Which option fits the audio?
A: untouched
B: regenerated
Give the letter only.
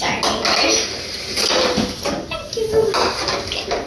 A